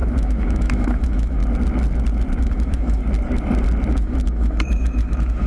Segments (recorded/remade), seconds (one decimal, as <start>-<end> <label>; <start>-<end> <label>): 0.0-1.4 remade; 1.4-2.4 recorded; 2.4-3.0 remade; 3.0-3.9 recorded; 3.9-5.5 remade